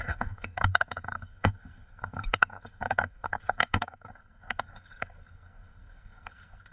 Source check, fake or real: fake